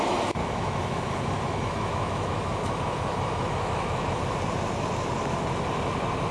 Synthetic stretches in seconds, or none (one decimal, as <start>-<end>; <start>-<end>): 0.4-4.2